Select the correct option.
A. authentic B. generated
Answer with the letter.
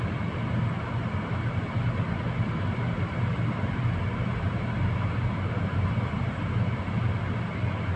A